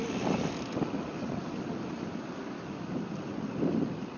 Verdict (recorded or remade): recorded